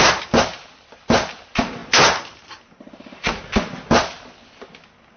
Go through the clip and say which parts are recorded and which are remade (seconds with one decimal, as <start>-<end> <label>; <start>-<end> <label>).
0.0-5.2 recorded